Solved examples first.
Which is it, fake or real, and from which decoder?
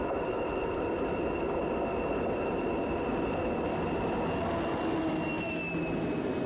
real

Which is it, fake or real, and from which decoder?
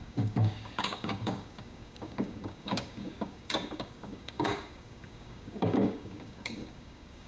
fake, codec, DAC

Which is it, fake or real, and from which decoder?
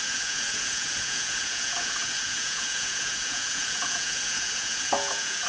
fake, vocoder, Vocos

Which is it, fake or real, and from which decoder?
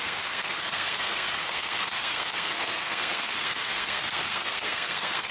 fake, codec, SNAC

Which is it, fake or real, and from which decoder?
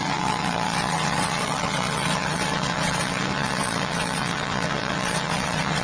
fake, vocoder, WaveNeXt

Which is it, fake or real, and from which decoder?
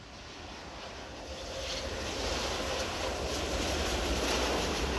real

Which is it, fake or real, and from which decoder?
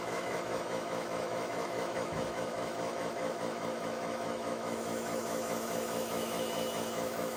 fake, autoencoder, DAC-VAE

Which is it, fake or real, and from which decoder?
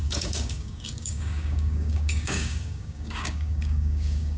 fake, codec, DAC